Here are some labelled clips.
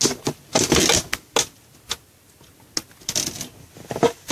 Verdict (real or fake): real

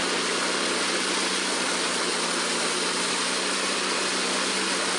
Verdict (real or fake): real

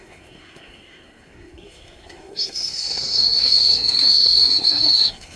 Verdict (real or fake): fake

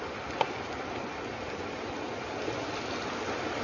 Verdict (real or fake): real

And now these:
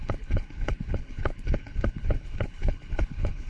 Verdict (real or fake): fake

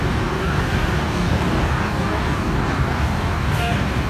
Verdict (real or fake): fake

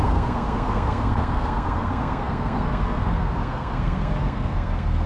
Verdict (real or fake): fake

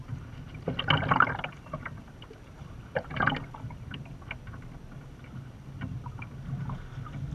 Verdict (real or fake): real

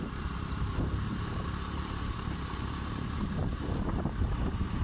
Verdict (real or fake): fake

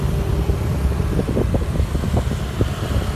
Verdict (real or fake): real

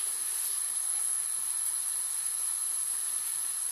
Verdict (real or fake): fake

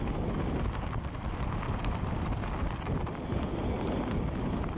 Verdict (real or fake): real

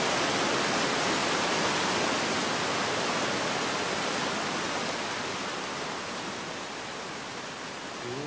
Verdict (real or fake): real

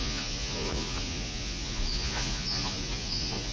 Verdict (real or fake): fake